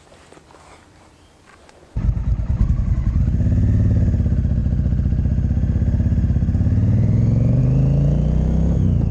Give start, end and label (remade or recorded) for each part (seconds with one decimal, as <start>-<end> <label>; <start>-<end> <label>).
0.0-1.5 recorded; 1.5-3.2 remade; 3.2-9.1 recorded